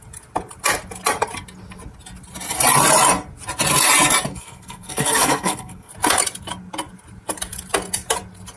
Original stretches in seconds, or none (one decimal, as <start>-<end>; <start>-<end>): 0.0-4.3; 5.9-8.6